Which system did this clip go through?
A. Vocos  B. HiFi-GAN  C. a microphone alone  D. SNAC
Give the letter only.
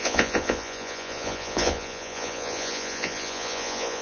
A